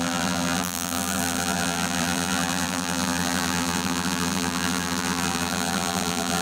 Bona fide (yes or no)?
no